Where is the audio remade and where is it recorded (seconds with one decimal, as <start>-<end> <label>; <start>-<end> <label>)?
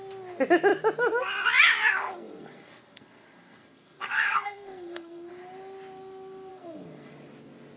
0.0-2.0 recorded; 2.0-5.3 remade; 5.3-6.5 recorded; 6.5-7.1 remade; 7.1-7.8 recorded